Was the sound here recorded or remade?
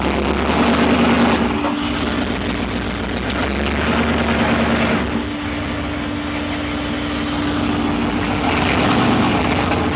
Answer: recorded